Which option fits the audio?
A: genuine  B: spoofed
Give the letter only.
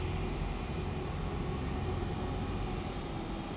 A